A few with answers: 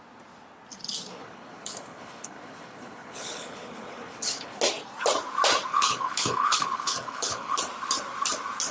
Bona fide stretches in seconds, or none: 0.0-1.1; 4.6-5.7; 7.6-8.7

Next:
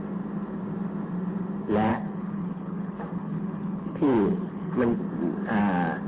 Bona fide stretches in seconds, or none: 0.0-1.9; 5.0-6.1

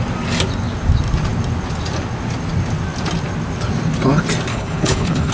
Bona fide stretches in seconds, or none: 0.0-4.5

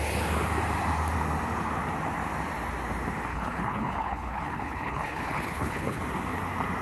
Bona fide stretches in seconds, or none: 0.0-3.3; 6.0-6.8

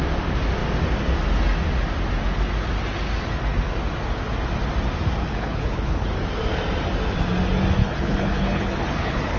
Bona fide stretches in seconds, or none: 0.0-5.2; 6.1-7.8

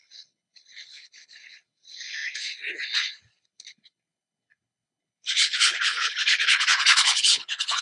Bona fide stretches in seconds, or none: none